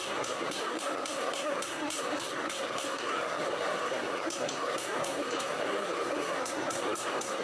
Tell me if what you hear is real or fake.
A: fake